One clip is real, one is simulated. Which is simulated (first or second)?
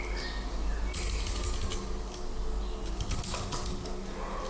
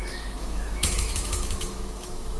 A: second